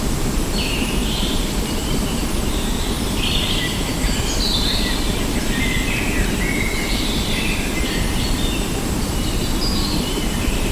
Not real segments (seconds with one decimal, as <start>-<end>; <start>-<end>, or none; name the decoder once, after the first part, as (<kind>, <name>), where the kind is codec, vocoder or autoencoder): none